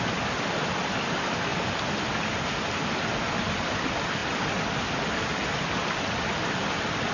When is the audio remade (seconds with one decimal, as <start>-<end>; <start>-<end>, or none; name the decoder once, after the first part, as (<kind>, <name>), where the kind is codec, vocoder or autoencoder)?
none